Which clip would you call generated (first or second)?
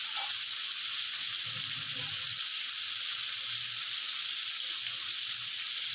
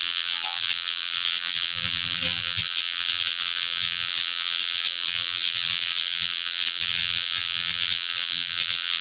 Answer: second